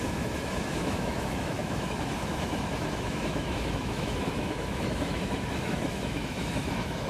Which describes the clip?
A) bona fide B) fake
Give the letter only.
B